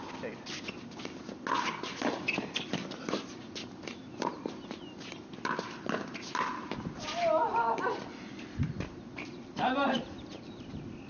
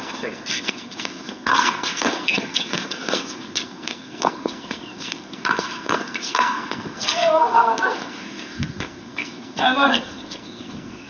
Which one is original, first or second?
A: first